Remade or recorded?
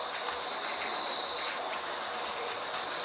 recorded